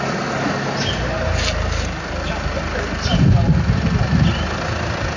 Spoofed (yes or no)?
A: no